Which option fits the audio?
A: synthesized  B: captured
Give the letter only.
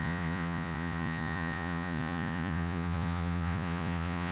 A